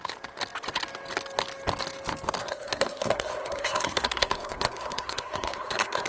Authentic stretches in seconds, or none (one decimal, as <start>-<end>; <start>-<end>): 0.0-2.4